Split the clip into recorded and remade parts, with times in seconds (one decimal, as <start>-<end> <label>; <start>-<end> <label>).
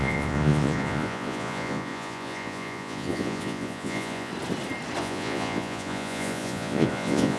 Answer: 0.0-4.3 remade; 4.3-5.0 recorded; 5.0-7.4 remade